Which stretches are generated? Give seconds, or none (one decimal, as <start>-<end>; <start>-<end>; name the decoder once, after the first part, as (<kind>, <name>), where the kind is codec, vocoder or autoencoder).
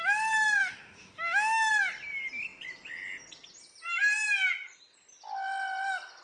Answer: 0.6-1.7 (autoencoder, DAC-VAE)